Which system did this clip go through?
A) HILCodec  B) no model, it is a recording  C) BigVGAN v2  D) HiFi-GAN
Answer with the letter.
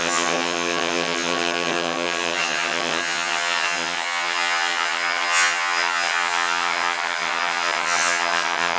D